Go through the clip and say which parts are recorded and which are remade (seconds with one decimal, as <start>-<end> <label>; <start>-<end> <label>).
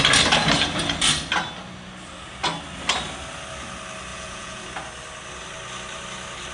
0.0-4.1 recorded; 4.1-4.6 remade; 4.6-6.5 recorded